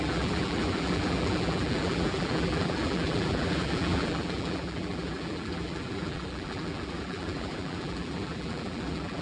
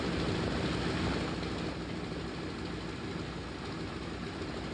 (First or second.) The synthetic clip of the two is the first